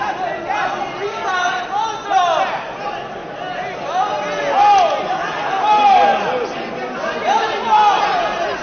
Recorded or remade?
recorded